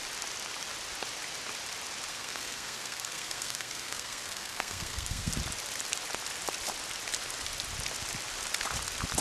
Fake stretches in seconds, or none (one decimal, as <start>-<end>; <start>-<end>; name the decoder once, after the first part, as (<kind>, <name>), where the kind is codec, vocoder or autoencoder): 2.1-5.3 (codec, SNAC)